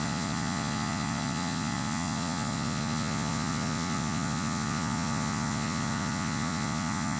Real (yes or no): no